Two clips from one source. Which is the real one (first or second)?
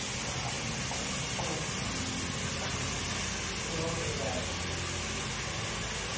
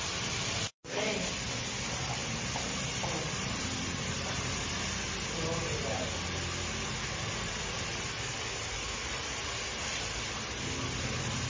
first